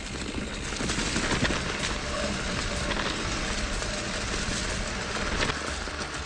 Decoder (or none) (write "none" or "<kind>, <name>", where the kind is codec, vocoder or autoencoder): none